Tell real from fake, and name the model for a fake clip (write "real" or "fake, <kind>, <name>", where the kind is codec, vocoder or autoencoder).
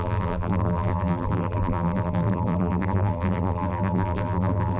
fake, vocoder, BigVGAN v2